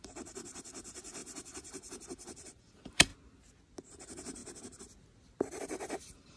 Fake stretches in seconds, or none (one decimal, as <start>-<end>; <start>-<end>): 0.0-3.1; 3.9-4.4; 5.6-6.4